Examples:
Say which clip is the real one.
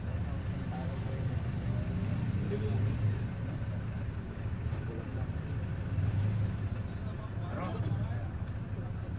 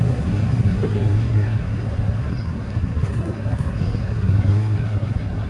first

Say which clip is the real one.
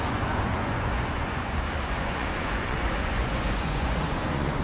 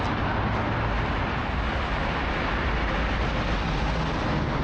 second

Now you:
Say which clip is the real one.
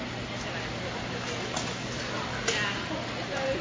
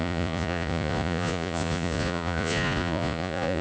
first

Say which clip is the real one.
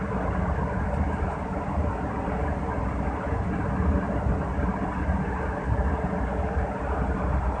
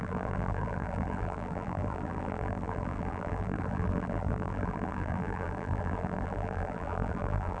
first